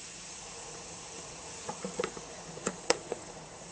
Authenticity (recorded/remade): remade